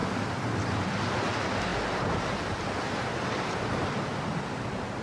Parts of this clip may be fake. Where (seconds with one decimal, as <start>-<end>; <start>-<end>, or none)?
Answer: 1.7-3.9